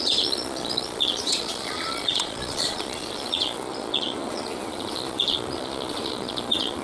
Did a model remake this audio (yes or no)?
yes